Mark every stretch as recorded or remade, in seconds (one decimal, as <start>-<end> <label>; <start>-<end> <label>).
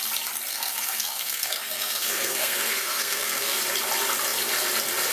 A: 0.0-0.5 recorded; 0.5-3.6 remade; 3.6-5.1 recorded